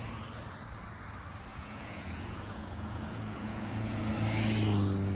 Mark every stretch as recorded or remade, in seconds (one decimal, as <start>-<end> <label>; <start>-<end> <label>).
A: 0.0-1.5 recorded; 1.5-4.0 remade; 4.0-5.1 recorded